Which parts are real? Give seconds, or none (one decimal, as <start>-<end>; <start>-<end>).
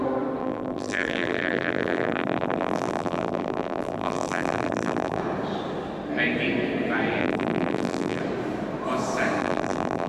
0.0-0.4; 5.2-7.2; 8.2-9.4